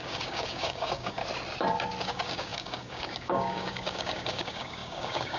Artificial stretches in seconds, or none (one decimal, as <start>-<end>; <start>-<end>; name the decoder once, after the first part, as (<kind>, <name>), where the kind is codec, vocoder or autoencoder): 0.0-1.2 (codec, DAC); 2.0-5.4

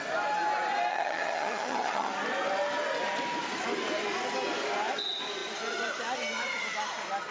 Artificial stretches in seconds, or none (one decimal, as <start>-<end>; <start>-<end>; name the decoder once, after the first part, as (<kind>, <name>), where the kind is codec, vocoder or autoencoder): 0.9-2.1 (vocoder, HiFi-GAN)

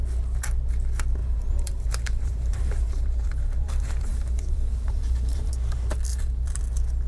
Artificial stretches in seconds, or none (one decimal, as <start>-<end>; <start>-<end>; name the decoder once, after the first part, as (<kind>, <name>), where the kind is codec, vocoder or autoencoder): 1.2-5.5 (vocoder, BigVGAN v2); 6.1-6.6

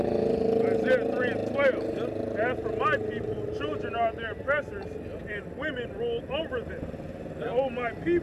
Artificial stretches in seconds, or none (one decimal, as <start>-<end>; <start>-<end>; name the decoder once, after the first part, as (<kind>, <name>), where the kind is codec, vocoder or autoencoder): none

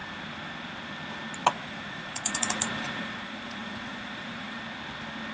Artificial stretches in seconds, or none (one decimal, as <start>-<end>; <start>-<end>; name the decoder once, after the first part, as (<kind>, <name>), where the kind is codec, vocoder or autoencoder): 1.4-4.6 (vocoder, Vocos)

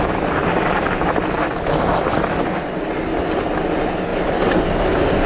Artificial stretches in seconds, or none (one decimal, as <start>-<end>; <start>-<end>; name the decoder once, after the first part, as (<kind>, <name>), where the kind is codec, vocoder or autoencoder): none

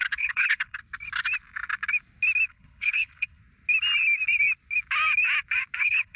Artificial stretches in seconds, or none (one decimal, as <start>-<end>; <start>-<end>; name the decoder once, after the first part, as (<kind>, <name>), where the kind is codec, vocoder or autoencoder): 0.0-0.8 (codec, HILCodec); 2.5-3.4; 5.8-6.2